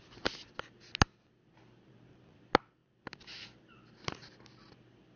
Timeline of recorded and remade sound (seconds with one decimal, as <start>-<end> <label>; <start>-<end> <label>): 0.0-5.2 recorded